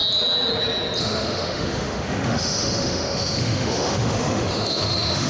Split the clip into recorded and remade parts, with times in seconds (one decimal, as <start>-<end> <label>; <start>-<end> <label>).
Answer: 0.0-1.0 recorded; 1.0-5.3 remade